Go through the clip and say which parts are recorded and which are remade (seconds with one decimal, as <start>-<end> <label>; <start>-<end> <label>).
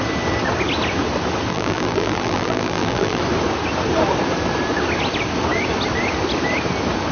0.0-1.5 recorded; 1.5-3.2 remade; 3.2-7.1 recorded